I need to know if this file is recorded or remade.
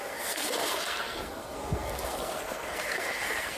remade